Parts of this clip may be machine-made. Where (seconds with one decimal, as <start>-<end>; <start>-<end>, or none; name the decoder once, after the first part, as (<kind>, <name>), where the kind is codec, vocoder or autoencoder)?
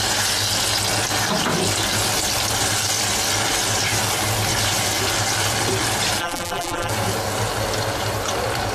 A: 6.2-6.9 (vocoder, BigVGAN v2)